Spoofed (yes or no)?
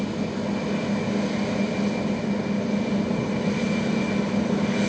no